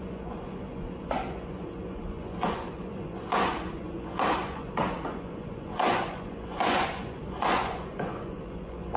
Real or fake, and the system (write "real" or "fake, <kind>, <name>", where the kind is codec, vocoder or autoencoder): fake, vocoder, Vocos